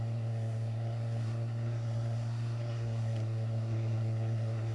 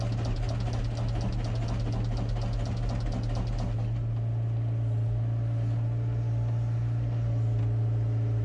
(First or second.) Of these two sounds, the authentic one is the second